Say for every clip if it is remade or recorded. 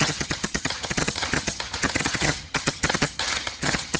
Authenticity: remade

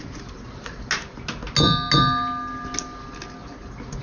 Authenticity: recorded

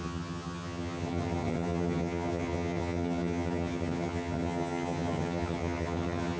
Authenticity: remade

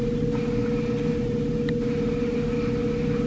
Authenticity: recorded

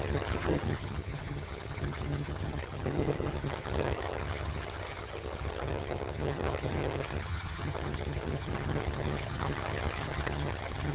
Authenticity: remade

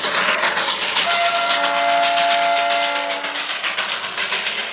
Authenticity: recorded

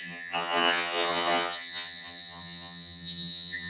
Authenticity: remade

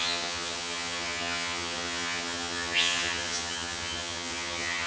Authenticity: remade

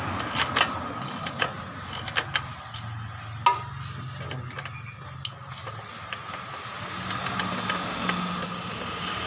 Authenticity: recorded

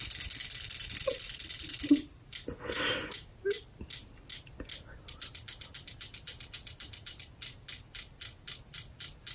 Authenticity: recorded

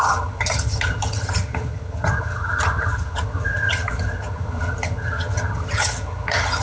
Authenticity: remade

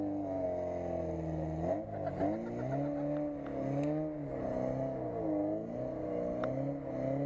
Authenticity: recorded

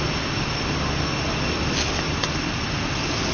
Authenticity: recorded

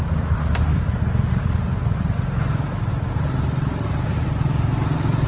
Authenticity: recorded